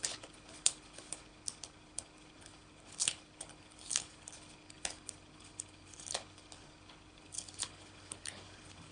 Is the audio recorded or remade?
remade